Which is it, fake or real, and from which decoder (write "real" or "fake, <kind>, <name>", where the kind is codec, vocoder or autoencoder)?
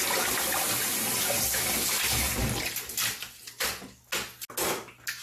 real